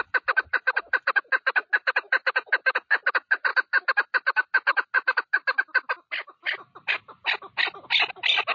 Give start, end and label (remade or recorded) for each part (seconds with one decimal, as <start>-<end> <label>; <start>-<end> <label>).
0.0-8.5 recorded